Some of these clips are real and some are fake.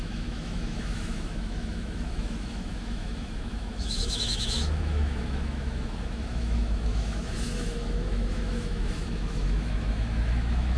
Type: fake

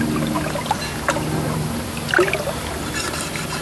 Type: real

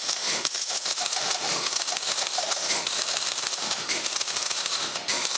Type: fake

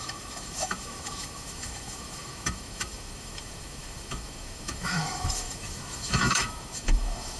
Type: fake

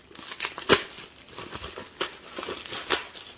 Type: real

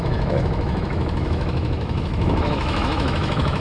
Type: fake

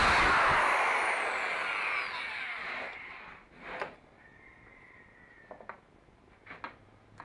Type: real